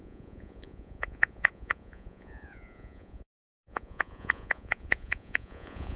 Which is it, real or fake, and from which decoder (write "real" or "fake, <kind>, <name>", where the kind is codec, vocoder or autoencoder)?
fake, vocoder, Vocos